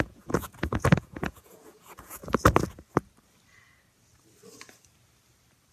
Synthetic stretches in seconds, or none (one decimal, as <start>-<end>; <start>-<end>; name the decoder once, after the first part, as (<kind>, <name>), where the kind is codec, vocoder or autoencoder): 0.0-2.2 (vocoder, Vocos)